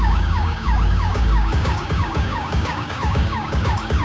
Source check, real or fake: fake